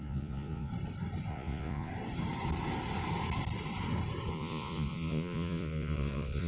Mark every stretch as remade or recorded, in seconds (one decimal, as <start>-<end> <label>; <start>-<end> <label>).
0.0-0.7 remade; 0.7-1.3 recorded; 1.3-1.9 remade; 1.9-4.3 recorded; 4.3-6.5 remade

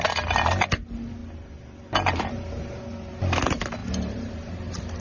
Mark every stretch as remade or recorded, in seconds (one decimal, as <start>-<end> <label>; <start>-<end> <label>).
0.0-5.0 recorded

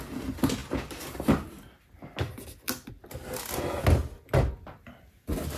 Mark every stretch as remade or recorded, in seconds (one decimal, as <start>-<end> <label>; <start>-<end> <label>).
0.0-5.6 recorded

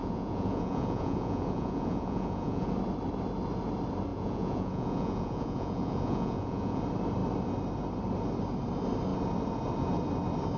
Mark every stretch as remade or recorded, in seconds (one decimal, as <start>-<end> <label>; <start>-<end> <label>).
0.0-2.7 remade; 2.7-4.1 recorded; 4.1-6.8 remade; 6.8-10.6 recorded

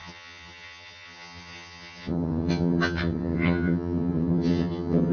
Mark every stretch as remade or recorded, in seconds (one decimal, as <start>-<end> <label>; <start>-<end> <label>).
0.0-5.1 remade

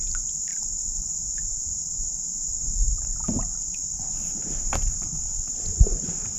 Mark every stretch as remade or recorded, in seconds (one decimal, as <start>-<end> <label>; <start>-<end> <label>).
0.0-6.4 remade

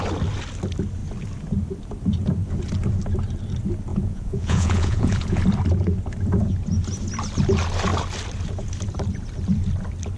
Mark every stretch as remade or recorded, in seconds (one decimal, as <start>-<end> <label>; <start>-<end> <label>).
0.0-3.9 recorded; 3.9-5.4 remade; 5.4-10.2 recorded